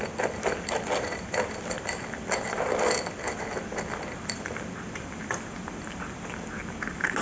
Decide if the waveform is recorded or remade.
recorded